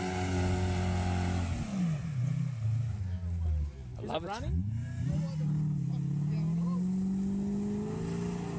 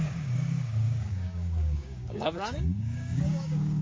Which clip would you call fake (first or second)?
second